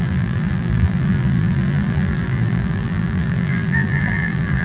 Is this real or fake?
fake